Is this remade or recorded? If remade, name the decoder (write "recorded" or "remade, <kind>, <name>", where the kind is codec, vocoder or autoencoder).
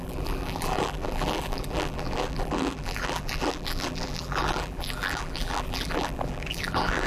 remade, vocoder, BigVGAN v2